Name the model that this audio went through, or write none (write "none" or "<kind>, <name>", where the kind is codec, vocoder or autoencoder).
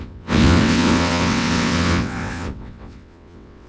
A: vocoder, WaveNeXt